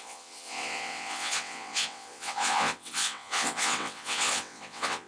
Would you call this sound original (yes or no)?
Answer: no